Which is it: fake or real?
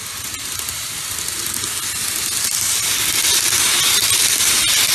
real